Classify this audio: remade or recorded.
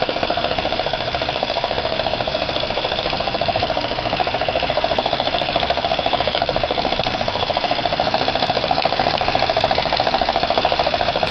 remade